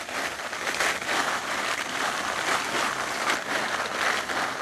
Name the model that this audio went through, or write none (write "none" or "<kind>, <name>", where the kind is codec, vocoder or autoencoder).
none